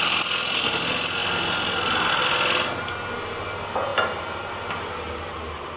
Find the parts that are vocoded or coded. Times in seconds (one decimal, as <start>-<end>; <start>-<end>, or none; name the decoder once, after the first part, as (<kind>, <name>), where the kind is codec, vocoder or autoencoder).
none